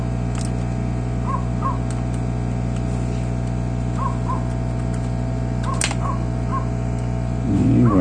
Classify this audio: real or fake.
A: real